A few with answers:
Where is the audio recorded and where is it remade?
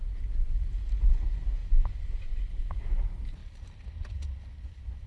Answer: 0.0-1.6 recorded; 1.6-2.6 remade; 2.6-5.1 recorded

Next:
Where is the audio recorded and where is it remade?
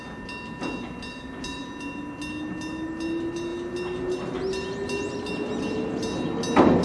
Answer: 0.0-6.8 recorded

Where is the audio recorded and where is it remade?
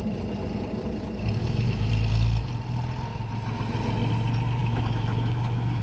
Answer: 0.0-1.4 recorded; 1.4-1.9 remade; 1.9-4.6 recorded; 4.6-5.8 remade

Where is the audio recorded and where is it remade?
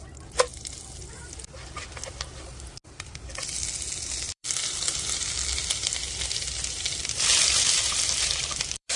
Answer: 0.0-0.5 remade; 0.5-4.3 recorded; 4.3-9.0 remade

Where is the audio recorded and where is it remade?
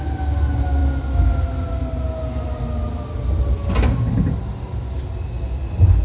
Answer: 0.0-6.0 recorded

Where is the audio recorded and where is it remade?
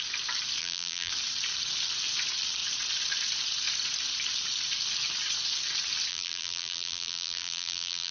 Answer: 0.0-0.6 recorded; 0.6-1.1 remade; 1.1-6.1 recorded; 6.1-8.1 remade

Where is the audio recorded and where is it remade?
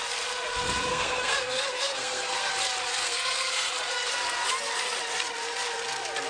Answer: 0.0-0.9 recorded; 0.9-2.5 remade; 2.5-2.9 recorded; 2.9-3.7 remade; 3.7-6.3 recorded